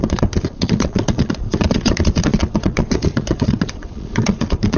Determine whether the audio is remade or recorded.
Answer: remade